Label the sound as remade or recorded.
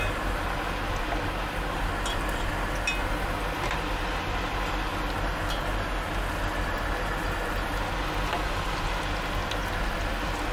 recorded